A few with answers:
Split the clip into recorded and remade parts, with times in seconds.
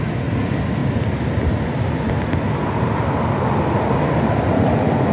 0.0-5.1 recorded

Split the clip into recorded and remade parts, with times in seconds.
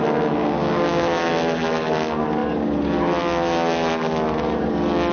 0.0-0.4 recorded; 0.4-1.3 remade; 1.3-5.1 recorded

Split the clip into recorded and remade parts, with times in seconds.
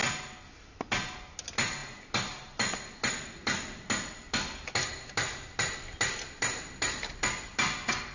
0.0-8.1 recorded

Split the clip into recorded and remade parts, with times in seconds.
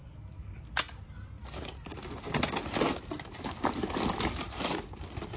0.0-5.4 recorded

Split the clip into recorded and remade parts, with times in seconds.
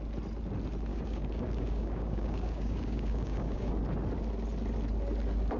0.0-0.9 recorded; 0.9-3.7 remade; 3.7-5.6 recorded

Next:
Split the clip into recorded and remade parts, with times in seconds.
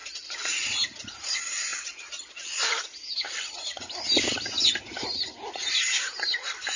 0.0-6.8 recorded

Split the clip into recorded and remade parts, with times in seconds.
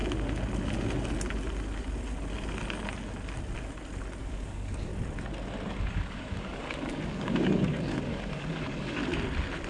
0.0-4.2 recorded; 4.2-4.9 remade; 4.9-5.7 recorded; 5.7-9.0 remade; 9.0-9.7 recorded